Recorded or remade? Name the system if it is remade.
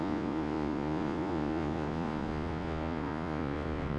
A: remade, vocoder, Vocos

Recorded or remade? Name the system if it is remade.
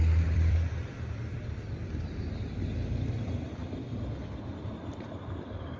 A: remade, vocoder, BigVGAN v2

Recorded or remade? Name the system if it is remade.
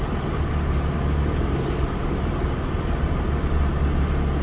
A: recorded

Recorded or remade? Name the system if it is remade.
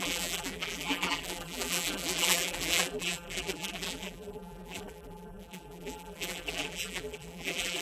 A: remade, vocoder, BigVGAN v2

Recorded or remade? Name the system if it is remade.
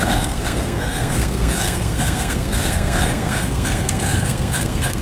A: remade, codec, SNAC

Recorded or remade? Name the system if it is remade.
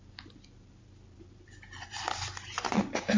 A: remade, vocoder, BigVGAN v2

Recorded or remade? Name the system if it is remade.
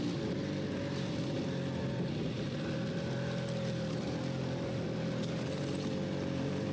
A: recorded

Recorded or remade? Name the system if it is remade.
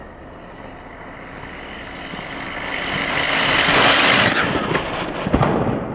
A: recorded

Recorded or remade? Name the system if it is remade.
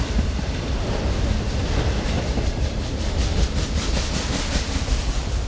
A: remade, vocoder, BigVGAN v2